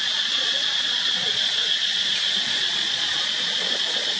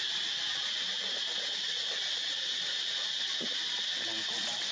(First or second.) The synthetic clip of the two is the first